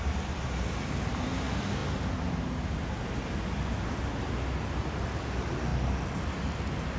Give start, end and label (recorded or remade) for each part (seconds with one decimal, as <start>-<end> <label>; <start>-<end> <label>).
0.0-5.7 recorded; 5.7-6.3 remade; 6.3-7.0 recorded